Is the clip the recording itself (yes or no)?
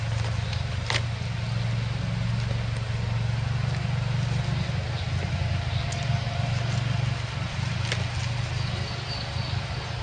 yes